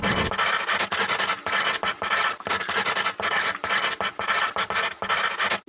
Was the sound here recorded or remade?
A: recorded